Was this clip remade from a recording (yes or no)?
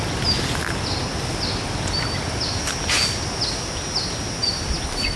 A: no